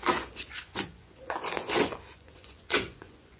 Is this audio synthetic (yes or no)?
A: yes